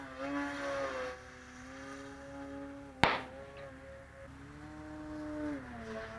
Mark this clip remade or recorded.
recorded